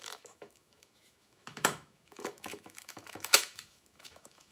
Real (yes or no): no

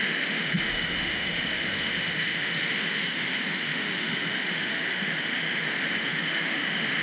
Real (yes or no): no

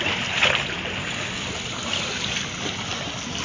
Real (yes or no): yes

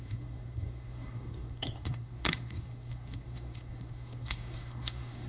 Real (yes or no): no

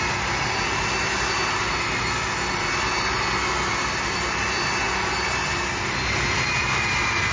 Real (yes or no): yes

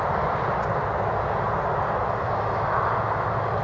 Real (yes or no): yes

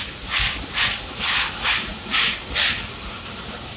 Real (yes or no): yes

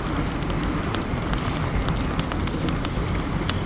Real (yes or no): yes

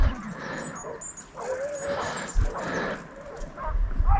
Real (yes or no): yes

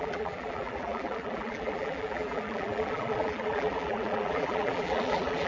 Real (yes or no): no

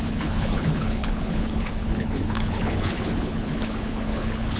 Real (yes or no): no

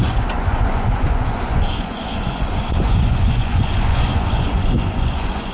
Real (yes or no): no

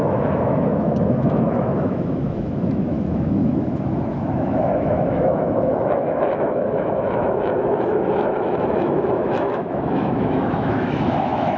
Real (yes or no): no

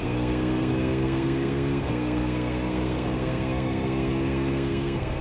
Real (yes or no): no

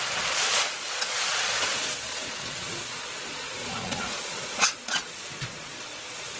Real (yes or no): no